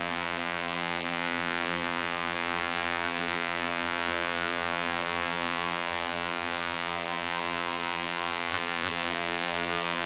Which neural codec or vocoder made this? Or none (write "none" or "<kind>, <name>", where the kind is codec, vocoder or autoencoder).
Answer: vocoder, BigVGAN v2